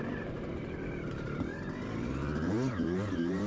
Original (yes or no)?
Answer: no